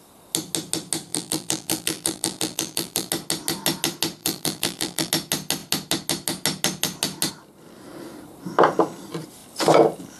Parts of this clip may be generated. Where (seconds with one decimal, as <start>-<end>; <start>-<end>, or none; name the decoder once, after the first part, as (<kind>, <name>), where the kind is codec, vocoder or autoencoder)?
1.1-3.1 (vocoder, BigVGAN v2); 4.2-5.1